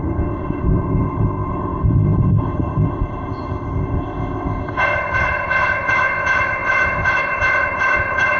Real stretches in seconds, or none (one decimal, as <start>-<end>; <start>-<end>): none